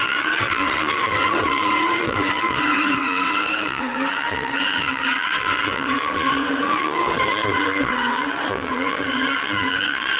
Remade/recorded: remade